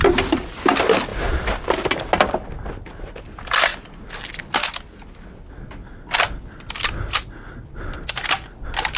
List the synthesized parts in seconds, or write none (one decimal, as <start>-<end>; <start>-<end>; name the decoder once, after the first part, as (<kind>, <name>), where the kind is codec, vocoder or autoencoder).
none